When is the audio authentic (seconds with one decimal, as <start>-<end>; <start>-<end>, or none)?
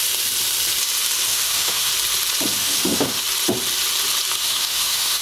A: 0.0-1.3; 1.9-2.6; 3.2-4.4